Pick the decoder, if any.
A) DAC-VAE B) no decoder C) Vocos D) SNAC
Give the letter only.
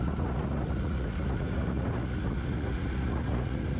C